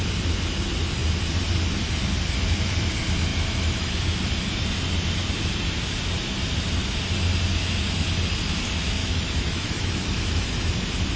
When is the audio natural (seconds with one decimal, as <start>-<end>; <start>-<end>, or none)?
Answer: 0.0-3.3; 4.0-9.0; 10.7-11.2